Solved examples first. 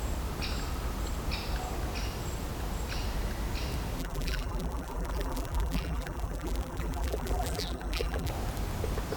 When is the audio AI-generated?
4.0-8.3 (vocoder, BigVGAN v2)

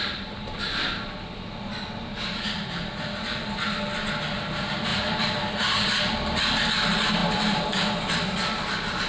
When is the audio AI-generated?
4.9-6.0 (vocoder, BigVGAN v2); 7.2-9.1

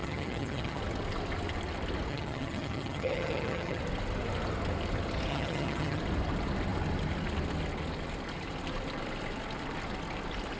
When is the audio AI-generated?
0.0-0.8 (vocoder, HiFi-GAN); 2.1-3.8; 5.3-6.0

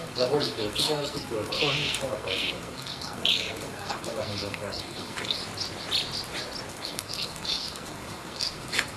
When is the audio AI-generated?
0.0-5.4 (codec, SNAC); 6.7-9.0

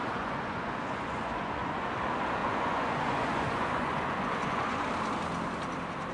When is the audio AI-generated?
0.0-1.9 (vocoder, Vocos); 2.4-4.8